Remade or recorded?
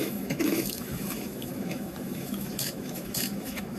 remade